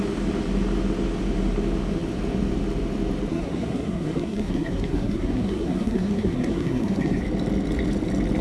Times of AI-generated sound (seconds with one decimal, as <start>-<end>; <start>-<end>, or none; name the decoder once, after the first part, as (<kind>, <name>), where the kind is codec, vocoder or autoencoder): 3.3-7.2 (codec, SNAC)